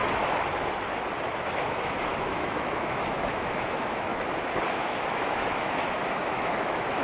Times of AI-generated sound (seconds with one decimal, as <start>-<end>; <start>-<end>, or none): 1.4-4.1; 4.7-7.0